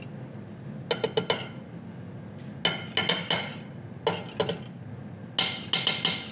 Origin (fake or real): real